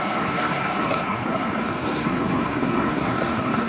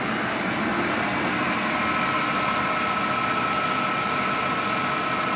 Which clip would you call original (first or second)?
second